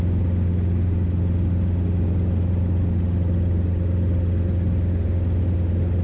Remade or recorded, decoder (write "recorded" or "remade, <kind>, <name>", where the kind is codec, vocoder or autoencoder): recorded